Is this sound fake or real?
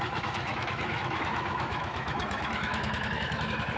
fake